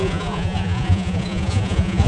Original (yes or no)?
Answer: no